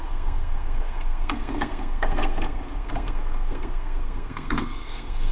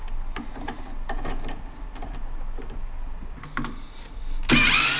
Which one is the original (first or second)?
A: second